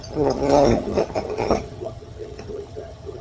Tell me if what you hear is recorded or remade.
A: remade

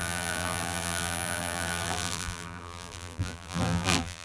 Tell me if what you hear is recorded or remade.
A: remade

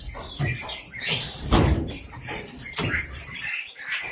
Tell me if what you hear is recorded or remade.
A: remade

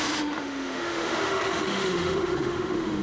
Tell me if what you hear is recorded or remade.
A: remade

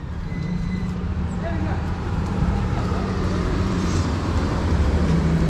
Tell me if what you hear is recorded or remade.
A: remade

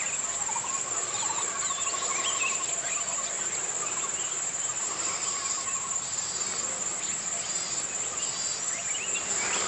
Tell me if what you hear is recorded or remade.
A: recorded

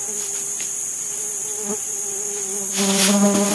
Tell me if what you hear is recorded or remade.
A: recorded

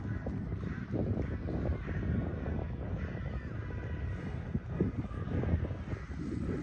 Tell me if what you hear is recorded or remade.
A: recorded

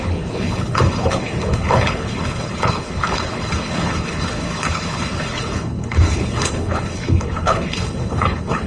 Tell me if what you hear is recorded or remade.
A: remade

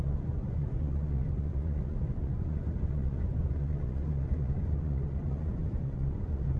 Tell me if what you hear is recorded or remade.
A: remade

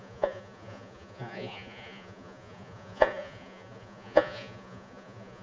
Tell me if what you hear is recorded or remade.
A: remade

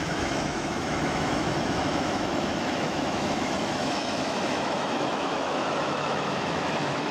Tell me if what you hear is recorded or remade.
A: remade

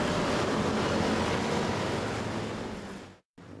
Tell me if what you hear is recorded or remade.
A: recorded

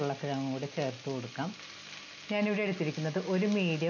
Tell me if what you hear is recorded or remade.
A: recorded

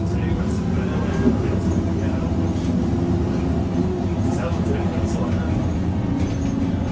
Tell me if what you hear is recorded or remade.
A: recorded